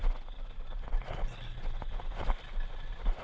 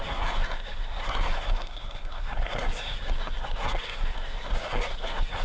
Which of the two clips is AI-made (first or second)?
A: second